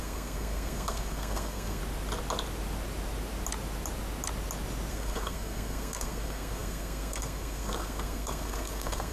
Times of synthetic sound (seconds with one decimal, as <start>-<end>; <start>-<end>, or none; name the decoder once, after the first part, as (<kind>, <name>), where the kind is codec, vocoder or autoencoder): 0.0-1.8 (codec, SNAC); 4.9-9.1

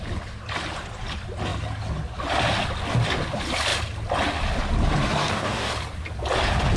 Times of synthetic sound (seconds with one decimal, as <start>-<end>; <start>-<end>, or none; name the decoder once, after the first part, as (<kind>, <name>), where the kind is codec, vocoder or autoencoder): 5.2-5.7 (codec, DAC)